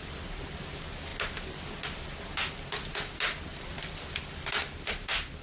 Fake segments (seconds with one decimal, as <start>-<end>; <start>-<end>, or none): none